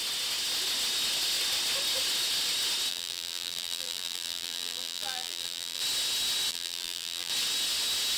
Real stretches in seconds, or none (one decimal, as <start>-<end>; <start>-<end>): 0.0-2.9; 5.8-6.5; 7.3-8.2